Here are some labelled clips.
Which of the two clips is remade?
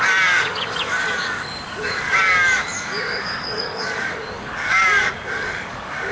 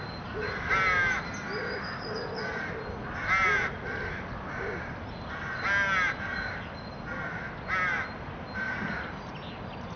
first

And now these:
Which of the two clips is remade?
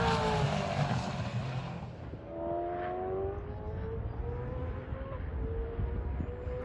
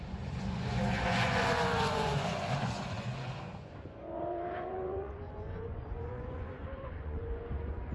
second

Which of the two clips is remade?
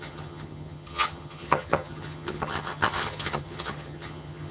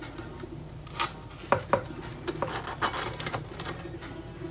first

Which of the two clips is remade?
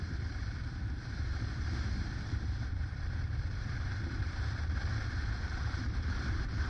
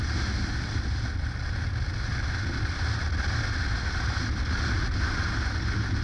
first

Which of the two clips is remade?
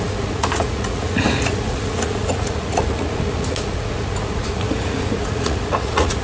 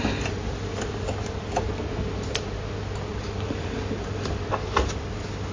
first